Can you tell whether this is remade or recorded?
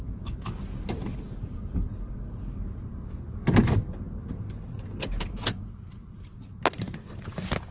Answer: recorded